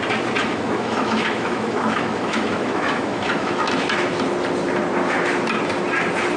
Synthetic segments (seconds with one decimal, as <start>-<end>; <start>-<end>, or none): 0.4-3.7